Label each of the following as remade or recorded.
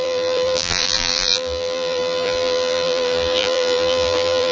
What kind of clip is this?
remade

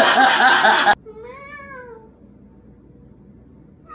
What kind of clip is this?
recorded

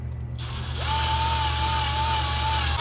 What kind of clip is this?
recorded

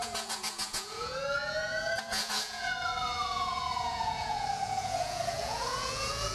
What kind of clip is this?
remade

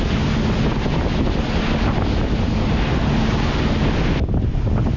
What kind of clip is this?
recorded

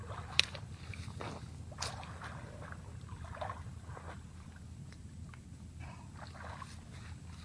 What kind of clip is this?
recorded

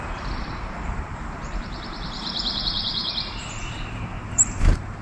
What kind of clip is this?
remade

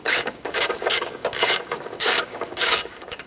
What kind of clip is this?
remade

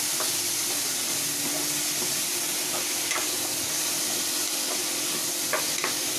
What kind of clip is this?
remade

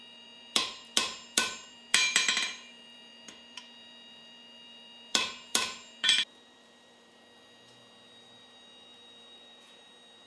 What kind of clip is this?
remade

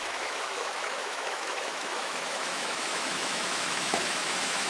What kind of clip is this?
remade